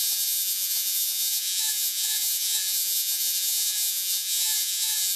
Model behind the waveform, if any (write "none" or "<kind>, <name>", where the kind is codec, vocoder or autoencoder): vocoder, Vocos